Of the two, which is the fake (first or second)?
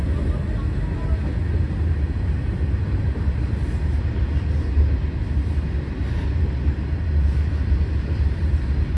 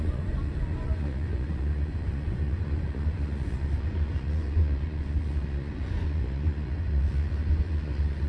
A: second